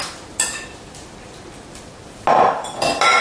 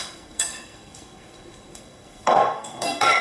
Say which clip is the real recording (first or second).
first